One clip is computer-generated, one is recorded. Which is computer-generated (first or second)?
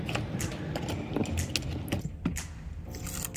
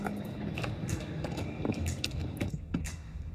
second